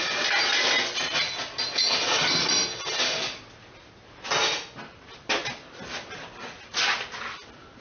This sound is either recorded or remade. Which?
recorded